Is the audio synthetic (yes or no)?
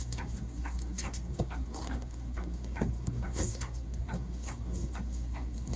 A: yes